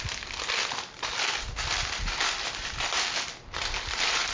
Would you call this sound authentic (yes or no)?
yes